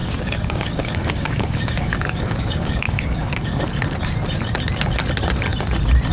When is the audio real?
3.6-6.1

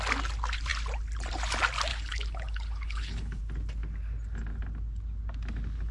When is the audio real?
0.0-1.9; 3.4-5.9

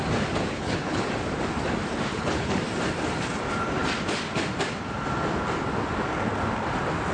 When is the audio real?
0.0-0.5; 1.1-2.1; 2.6-7.1

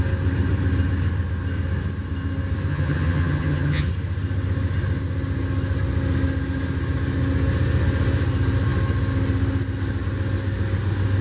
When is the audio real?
0.0-2.7; 3.9-11.2

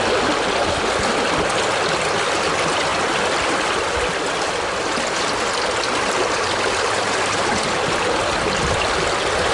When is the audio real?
0.0-9.5